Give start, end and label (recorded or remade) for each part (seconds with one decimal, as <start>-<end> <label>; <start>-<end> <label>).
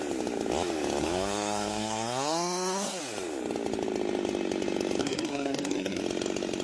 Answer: 0.0-1.0 recorded; 1.0-3.0 remade; 3.0-5.0 recorded; 5.0-6.0 remade; 6.0-6.6 recorded